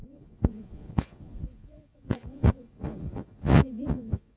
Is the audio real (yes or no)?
no